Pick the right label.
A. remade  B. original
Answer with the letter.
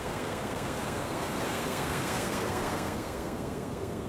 A